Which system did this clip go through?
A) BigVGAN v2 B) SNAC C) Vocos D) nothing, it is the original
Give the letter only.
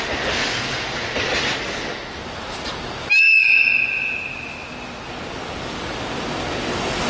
D